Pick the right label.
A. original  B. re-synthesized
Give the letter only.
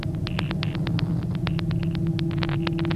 A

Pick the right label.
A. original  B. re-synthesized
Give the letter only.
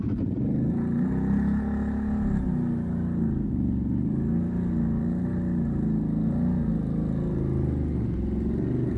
A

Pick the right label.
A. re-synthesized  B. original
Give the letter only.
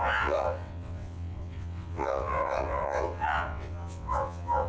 A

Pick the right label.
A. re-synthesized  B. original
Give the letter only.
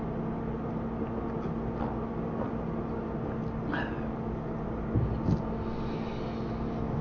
B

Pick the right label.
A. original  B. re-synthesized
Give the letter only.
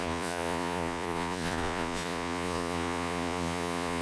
B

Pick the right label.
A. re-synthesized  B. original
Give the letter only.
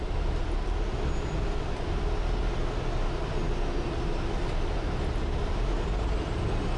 B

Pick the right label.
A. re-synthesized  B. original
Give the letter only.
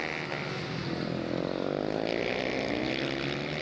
B